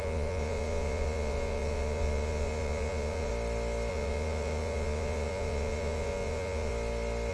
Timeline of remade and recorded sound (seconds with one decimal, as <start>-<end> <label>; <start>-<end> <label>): 0.0-3.3 remade; 3.3-3.9 recorded; 3.9-6.7 remade; 6.7-7.3 recorded